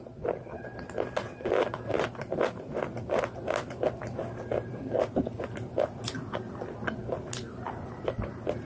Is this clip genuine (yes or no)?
yes